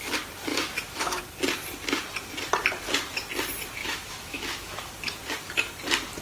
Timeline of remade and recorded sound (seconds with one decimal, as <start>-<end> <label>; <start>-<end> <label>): 0.0-0.5 recorded; 0.5-1.2 remade; 1.2-3.8 recorded; 3.8-4.9 remade; 4.9-6.2 recorded